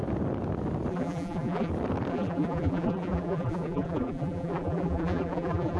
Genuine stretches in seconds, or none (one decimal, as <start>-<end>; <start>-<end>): 0.0-0.9; 1.7-2.1